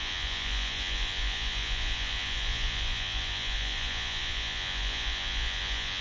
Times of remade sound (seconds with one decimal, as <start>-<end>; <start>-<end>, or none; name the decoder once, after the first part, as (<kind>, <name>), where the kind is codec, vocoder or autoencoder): 0.0-6.0 (vocoder, Vocos)